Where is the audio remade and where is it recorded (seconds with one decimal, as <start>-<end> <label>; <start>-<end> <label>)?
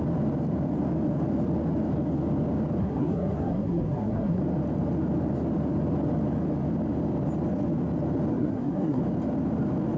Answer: 0.0-2.8 recorded; 2.8-4.4 remade; 4.4-8.3 recorded; 8.3-9.0 remade; 9.0-10.0 recorded